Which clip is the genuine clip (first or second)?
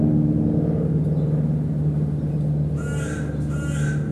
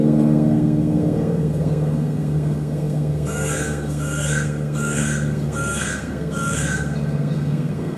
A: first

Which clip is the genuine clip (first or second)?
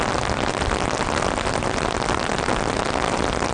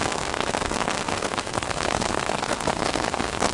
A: first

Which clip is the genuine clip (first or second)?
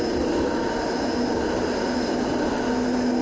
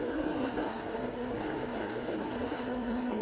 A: first